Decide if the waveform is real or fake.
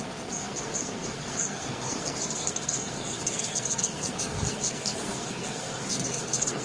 fake